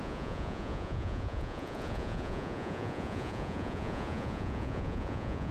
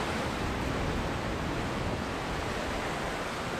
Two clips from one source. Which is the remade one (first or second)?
first